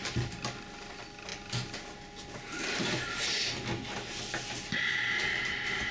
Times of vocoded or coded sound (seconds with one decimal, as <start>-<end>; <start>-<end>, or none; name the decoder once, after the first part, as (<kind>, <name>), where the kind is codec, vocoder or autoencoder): none

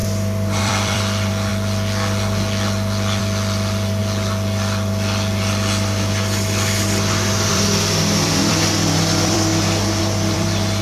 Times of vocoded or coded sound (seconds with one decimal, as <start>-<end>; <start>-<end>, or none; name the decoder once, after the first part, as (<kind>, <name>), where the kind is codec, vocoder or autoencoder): 0.6-1.5 (vocoder, BigVGAN v2); 3.2-4.0; 7.5-10.8

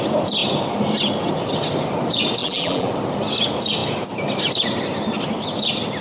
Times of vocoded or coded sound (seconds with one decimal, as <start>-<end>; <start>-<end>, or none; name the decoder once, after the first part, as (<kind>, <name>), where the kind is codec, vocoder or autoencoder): 2.4-2.9 (vocoder, BigVGAN v2)

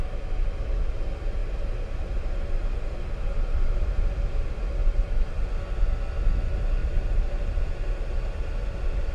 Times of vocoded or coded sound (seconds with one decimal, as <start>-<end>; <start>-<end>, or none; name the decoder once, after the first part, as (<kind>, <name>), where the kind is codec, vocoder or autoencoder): 1.4-4.2 (vocoder, BigVGAN v2); 4.8-5.4; 6.8-7.9

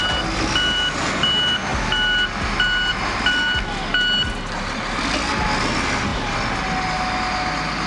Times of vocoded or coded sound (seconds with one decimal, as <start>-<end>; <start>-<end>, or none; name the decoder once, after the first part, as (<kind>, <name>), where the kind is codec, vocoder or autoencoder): none

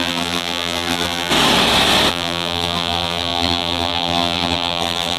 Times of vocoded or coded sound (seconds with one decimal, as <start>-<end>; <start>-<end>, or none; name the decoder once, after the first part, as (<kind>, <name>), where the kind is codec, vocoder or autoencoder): 0.0-1.3 (vocoder, BigVGAN v2); 2.1-5.2